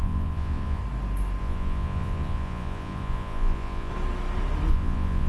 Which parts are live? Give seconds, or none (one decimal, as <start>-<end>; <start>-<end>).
0.8-1.4; 3.9-4.7